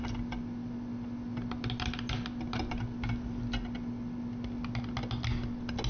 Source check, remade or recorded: recorded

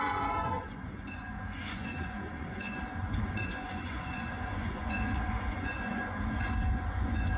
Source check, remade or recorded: remade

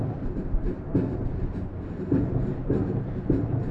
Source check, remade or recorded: remade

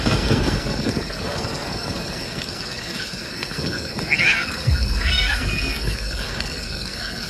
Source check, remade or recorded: remade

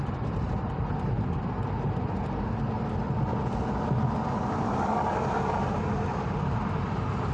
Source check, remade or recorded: recorded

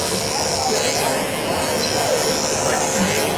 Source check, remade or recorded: recorded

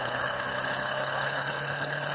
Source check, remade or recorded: remade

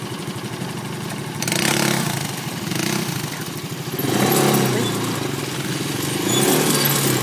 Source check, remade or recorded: recorded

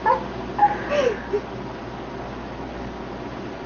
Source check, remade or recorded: recorded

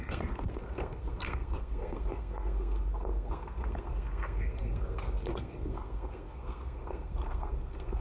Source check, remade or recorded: remade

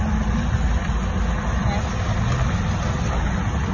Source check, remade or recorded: recorded